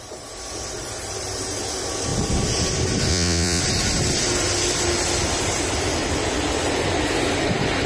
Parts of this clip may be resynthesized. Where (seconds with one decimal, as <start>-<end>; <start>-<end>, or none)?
3.1-3.6